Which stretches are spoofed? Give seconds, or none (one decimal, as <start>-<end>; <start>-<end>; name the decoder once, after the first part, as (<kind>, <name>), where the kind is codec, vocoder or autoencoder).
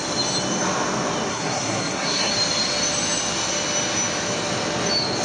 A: 1.3-2.3 (codec, SNAC)